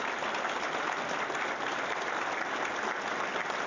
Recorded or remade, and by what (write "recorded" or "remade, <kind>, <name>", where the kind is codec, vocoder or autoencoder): recorded